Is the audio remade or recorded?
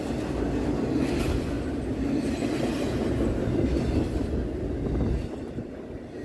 recorded